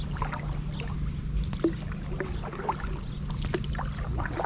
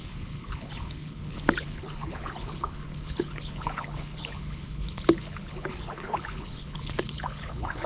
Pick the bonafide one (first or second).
first